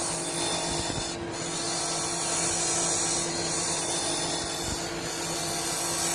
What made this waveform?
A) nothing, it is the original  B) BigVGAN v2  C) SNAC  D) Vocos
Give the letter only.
A